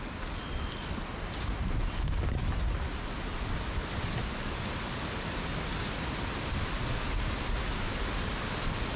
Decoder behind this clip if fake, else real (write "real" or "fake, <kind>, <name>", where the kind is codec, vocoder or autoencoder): real